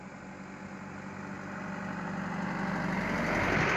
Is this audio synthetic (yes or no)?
no